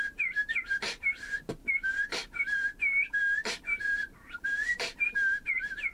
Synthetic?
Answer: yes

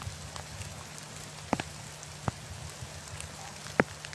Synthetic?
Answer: no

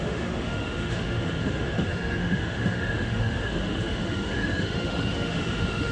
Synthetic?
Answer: yes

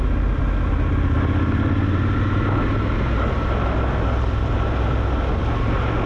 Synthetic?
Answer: no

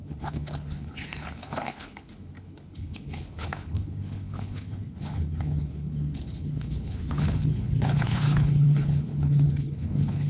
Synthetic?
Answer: yes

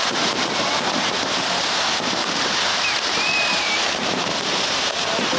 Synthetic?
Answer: yes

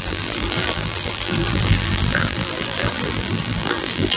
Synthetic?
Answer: yes